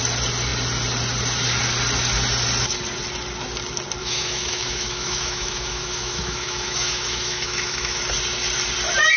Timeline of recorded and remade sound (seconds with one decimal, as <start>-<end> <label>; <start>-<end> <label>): 0.0-4.0 recorded; 4.0-8.0 remade; 8.0-9.2 recorded